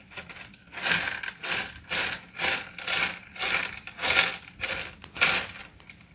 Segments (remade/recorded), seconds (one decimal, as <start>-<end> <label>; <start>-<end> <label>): 0.0-6.1 recorded

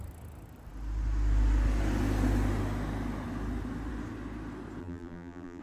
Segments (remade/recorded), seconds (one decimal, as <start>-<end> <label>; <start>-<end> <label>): 0.0-4.8 recorded; 4.8-5.6 remade

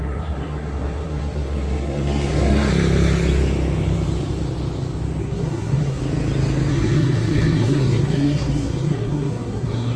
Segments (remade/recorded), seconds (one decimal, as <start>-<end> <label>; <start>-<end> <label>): 0.0-2.7 remade; 2.7-5.2 recorded; 5.2-6.0 remade; 6.0-6.7 recorded; 6.7-10.0 remade

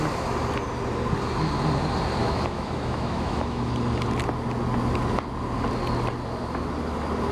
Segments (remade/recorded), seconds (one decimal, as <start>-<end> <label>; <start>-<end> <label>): 0.0-2.2 recorded; 2.2-3.7 remade; 3.7-7.3 recorded

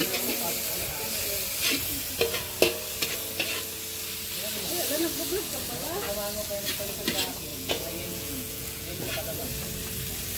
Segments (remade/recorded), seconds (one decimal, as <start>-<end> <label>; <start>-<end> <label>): 0.0-7.5 recorded; 7.5-9.1 remade; 9.1-10.4 recorded

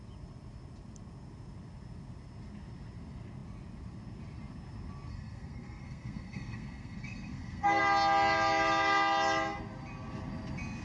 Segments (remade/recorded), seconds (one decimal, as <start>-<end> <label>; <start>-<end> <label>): 0.0-5.1 recorded; 5.1-7.8 remade; 7.8-10.8 recorded

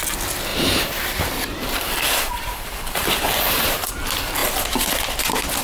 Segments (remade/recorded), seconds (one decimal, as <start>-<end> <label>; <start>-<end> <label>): 0.0-0.5 recorded; 0.5-3.9 remade; 3.9-5.6 recorded

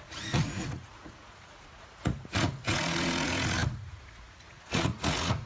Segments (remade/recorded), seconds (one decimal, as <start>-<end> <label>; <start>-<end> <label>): 0.0-5.5 remade